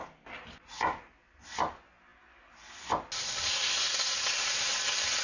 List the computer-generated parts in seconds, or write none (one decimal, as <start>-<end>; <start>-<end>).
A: none